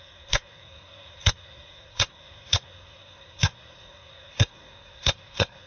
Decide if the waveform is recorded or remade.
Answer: remade